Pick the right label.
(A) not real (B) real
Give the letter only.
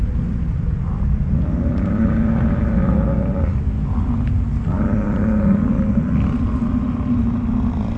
B